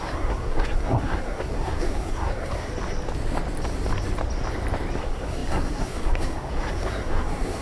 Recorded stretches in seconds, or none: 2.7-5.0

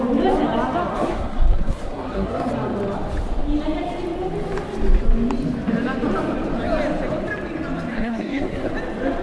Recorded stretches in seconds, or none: 0.0-0.9; 2.5-7.9; 8.7-9.2

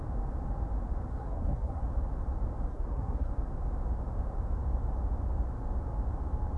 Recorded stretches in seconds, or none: 0.0-1.1; 1.8-2.7; 3.3-6.6